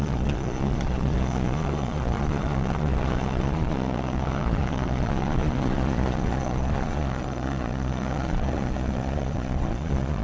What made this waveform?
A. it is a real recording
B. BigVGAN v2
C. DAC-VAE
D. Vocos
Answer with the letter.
D